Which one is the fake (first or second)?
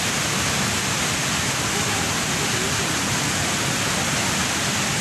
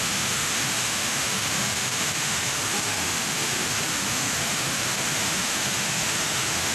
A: second